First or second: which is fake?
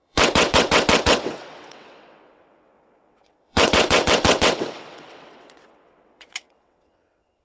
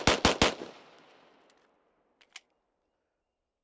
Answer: first